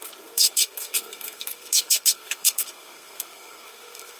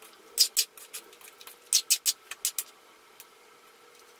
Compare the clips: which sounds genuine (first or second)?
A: second